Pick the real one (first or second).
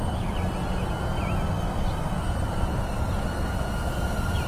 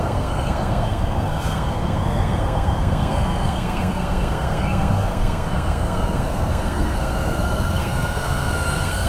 first